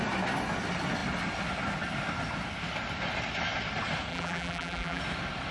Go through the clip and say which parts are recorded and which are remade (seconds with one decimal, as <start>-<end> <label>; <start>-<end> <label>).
0.0-4.1 recorded; 4.1-5.0 remade; 5.0-5.5 recorded